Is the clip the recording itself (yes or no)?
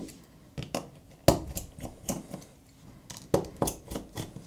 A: yes